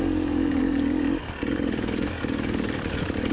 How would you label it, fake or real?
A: fake